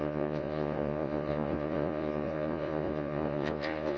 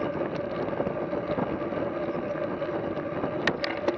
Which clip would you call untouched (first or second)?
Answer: second